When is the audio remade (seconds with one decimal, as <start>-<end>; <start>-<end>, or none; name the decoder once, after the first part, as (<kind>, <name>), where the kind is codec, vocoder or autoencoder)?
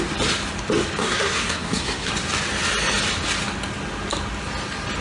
1.0-2.1 (codec, SNAC)